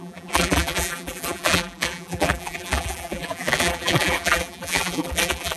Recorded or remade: remade